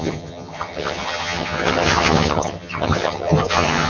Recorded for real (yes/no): no